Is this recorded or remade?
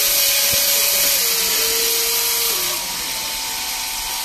recorded